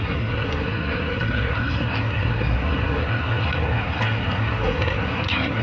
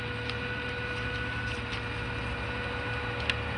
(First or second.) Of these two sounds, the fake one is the first